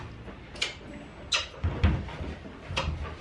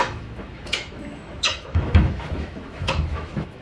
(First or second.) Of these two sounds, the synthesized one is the second